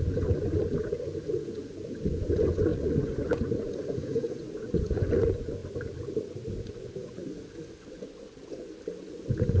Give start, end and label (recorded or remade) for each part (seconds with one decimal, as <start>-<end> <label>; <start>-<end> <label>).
0.0-5.6 remade; 5.6-6.7 recorded; 6.7-9.6 remade